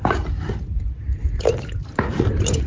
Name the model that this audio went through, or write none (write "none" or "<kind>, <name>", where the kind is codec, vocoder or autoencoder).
none